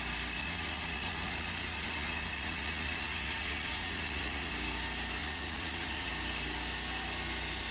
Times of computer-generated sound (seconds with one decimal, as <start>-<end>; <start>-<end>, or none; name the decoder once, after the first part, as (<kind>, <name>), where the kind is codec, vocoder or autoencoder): 0.4-4.5 (vocoder, Vocos); 5.2-6.1